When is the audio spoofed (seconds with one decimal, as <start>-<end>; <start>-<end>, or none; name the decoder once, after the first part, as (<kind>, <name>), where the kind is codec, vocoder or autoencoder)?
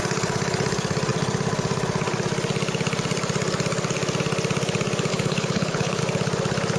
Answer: 5.1-6.0 (codec, HILCodec)